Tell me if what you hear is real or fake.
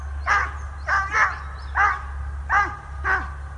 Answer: real